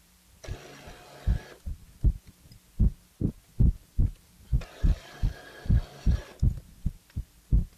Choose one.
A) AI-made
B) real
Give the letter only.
B